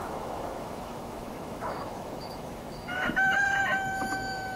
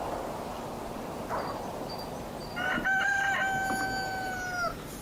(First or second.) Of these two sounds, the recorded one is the second